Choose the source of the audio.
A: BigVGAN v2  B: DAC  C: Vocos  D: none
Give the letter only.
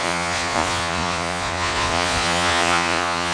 C